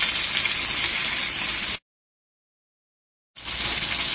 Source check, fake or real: real